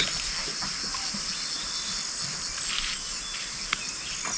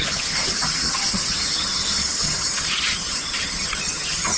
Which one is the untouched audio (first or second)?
first